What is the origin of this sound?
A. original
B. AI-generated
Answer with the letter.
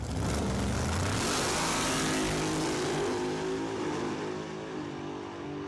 A